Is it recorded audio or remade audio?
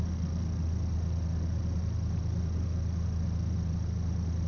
recorded